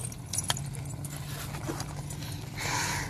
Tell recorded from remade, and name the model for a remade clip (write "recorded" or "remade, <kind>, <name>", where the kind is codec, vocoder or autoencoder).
recorded